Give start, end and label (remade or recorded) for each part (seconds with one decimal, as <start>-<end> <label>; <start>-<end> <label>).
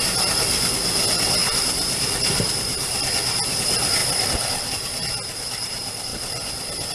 0.0-1.4 recorded; 1.4-3.6 remade; 3.6-4.0 recorded; 4.0-4.7 remade; 4.7-6.1 recorded; 6.1-6.9 remade